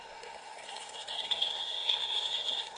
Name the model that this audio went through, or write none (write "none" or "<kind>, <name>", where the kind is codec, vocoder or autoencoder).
codec, SNAC